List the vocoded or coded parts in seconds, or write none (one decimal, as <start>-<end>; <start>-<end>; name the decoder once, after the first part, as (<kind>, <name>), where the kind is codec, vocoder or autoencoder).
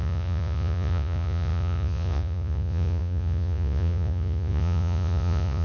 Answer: 0.0-5.6 (vocoder, Vocos)